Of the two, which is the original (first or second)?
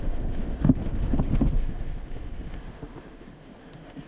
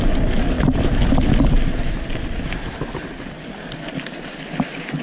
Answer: second